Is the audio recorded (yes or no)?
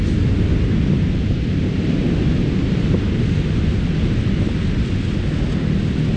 yes